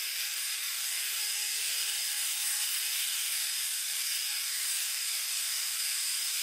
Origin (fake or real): fake